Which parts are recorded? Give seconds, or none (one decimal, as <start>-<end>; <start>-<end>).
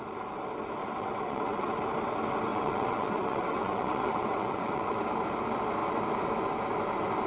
0.0-0.8; 1.7-2.5; 5.0-7.3